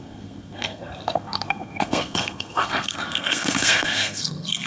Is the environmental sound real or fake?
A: fake